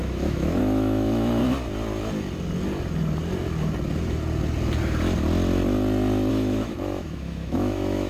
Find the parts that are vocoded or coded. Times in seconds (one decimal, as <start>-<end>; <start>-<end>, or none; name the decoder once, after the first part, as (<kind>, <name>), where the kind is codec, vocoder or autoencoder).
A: 0.0-1.4 (autoencoder, DAC-VAE); 6.3-8.1